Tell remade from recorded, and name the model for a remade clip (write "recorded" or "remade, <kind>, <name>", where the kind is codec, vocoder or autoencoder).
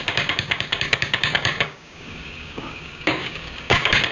remade, codec, DAC